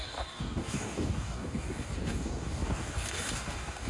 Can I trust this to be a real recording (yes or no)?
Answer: no